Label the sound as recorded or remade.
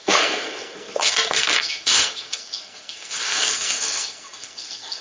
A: remade